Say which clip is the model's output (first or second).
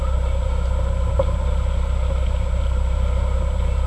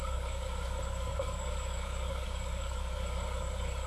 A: second